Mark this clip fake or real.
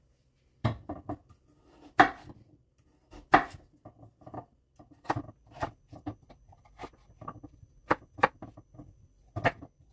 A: real